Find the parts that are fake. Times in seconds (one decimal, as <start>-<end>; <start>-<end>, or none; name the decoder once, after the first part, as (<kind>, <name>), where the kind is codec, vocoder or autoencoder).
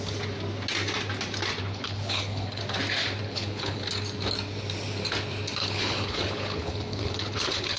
1.6-2.6 (codec, HILCodec); 3.2-3.9; 5.6-7.8